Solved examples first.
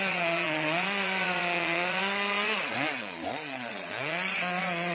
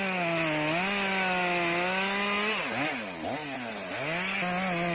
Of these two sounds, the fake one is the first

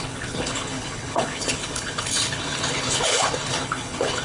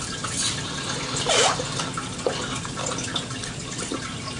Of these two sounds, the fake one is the first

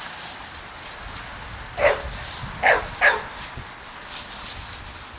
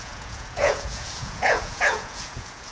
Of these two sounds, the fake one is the second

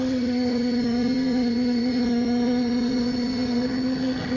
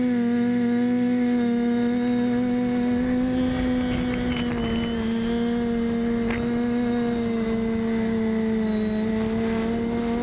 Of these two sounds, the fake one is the first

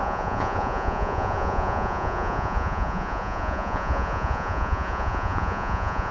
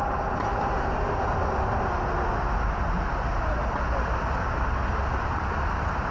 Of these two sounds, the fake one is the first